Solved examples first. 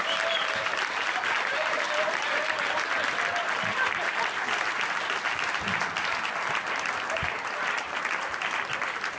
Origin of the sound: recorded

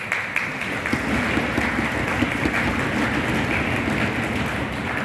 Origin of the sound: recorded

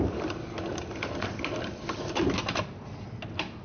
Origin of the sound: recorded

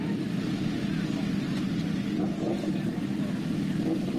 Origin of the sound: recorded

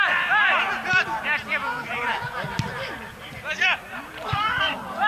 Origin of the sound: remade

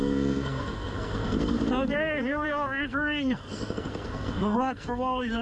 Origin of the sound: remade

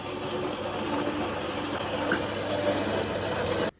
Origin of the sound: recorded